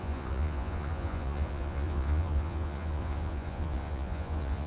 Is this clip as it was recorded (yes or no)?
no